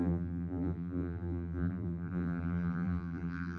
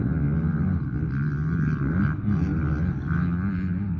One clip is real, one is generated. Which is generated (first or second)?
first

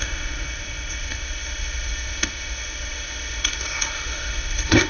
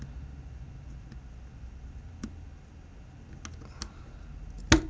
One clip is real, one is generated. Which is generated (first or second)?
first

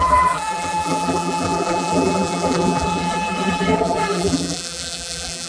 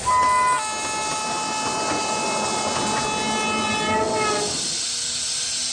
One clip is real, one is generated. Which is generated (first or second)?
first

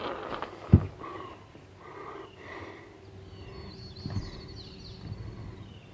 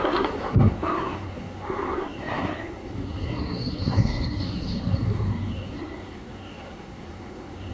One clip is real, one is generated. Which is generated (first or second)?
second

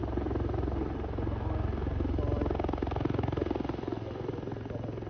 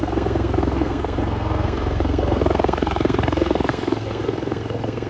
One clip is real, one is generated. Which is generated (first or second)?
second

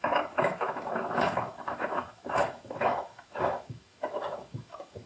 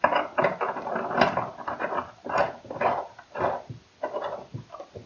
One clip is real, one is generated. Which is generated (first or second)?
first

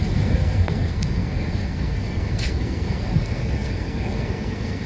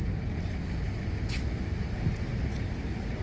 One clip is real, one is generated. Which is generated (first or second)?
first